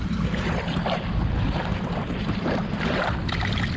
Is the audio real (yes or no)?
yes